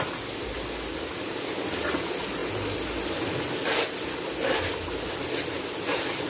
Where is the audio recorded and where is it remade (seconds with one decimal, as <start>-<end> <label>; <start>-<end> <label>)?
0.0-6.3 recorded